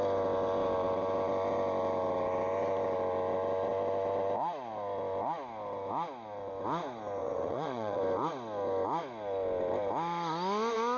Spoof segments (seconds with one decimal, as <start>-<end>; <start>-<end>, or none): 7.2-8.0